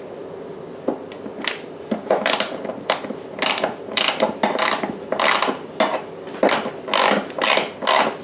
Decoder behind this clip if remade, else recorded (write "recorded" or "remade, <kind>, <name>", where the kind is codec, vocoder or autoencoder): recorded